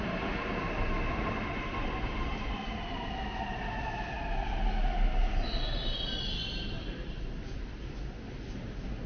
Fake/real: real